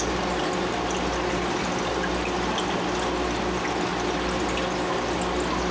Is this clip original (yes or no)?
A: yes